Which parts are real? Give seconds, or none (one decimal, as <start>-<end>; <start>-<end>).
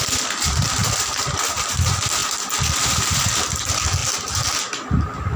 0.8-1.5; 2.2-3.1; 4.0-4.9